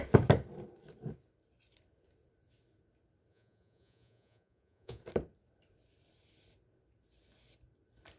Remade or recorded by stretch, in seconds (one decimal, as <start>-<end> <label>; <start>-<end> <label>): 0.0-3.3 recorded; 3.3-5.0 remade; 5.0-8.2 recorded